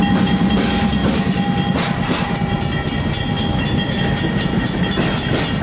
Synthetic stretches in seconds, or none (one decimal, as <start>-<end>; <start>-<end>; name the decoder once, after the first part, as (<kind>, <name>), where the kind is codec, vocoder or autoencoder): none